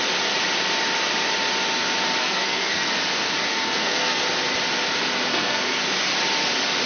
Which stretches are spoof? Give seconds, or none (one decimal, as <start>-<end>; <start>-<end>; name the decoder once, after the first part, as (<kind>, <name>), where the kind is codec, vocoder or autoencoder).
2.2-2.9 (codec, SNAC); 3.5-4.2; 5.3-5.8